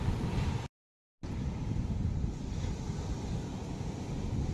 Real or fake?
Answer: real